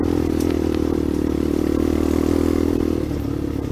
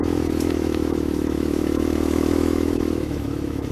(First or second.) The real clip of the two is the first